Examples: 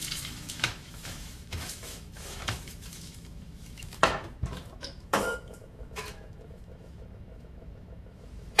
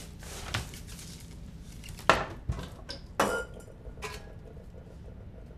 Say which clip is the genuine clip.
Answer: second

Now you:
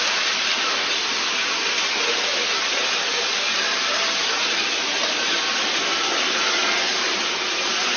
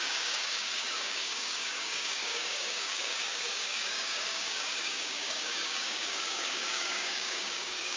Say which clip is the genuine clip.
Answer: first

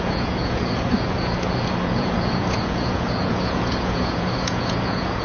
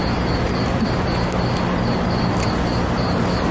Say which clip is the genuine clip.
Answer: second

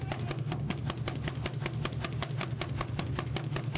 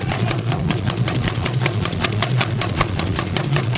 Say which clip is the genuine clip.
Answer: first